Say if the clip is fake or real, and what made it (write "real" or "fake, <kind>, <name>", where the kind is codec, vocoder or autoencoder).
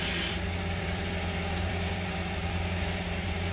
fake, vocoder, BigVGAN v2